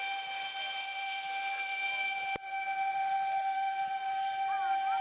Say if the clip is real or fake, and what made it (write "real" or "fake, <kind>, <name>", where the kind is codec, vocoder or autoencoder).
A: real